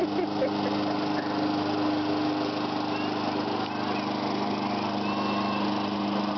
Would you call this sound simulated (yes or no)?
no